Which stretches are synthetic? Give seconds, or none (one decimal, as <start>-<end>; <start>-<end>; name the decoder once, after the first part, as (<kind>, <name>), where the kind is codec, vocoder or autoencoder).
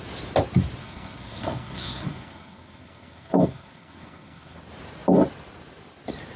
0.8-4.6 (codec, SNAC)